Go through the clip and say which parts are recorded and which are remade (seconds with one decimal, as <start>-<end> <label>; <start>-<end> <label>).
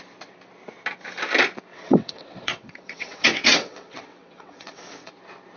0.0-1.7 recorded; 1.7-5.1 remade; 5.1-5.6 recorded